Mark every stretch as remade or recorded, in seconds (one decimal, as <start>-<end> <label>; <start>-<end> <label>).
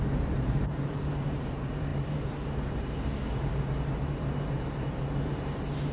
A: 0.0-5.9 remade